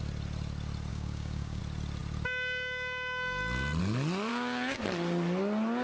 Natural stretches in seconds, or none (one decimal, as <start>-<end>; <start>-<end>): 0.0-0.9; 1.6-4.3; 4.8-5.8